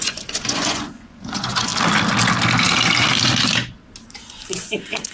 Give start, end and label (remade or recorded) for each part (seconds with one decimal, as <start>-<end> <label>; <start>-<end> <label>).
0.0-1.7 remade; 1.7-4.2 recorded; 4.2-5.1 remade